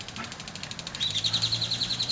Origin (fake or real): real